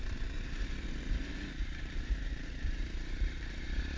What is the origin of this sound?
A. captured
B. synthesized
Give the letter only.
B